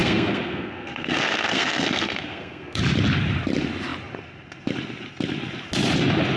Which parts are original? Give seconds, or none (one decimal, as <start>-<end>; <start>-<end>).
2.8-6.4